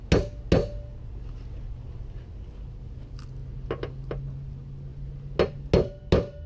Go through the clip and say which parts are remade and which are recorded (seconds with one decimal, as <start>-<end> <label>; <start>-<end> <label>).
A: 0.0-6.5 recorded